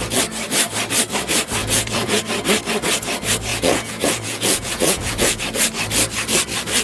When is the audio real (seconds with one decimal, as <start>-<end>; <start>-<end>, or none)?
0.0-1.6; 2.2-3.5; 5.4-6.8